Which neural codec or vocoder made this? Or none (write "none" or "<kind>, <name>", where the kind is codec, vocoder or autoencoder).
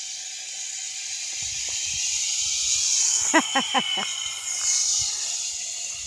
none